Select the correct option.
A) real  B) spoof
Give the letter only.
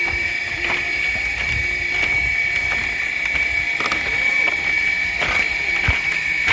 A